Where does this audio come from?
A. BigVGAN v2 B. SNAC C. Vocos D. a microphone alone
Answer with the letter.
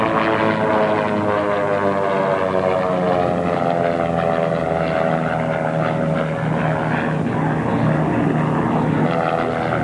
D